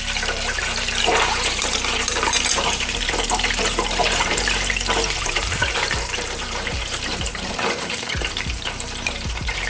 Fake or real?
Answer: fake